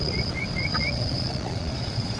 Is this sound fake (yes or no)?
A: yes